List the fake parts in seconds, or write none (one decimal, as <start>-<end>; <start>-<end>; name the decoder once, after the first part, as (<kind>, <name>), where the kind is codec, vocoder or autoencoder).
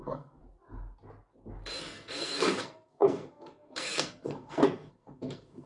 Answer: 0.0-0.4 (codec, SNAC); 1.8-5.7